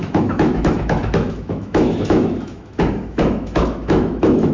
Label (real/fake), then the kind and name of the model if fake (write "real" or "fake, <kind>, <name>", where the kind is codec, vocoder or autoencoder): fake, autoencoder, DAC-VAE